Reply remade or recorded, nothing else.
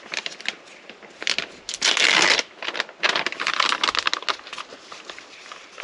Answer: recorded